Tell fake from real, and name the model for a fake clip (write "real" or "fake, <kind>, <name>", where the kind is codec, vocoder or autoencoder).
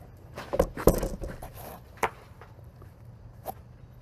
real